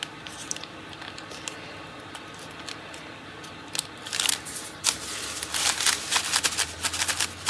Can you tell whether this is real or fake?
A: real